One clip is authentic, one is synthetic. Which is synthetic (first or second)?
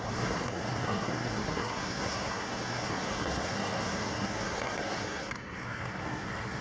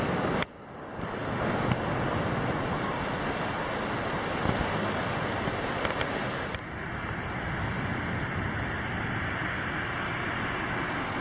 first